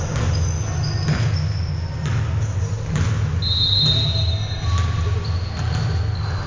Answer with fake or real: real